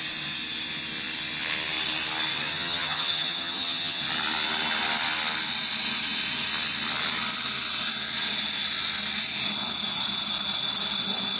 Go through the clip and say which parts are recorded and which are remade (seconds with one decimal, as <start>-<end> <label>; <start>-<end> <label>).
0.0-2.5 recorded; 2.5-4.0 remade; 4.0-11.4 recorded

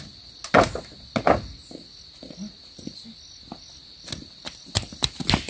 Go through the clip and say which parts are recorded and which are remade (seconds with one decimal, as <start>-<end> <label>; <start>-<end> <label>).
0.0-5.5 recorded

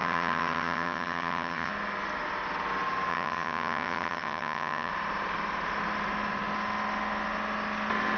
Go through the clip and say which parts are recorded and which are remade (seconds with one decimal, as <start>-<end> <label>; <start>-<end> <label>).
0.0-1.7 remade; 1.7-3.1 recorded; 3.1-4.9 remade; 4.9-8.2 recorded

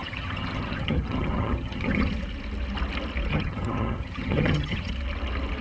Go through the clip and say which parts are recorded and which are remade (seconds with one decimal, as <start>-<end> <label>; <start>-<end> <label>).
0.0-2.1 remade; 2.1-3.3 recorded; 3.3-4.9 remade; 4.9-5.6 recorded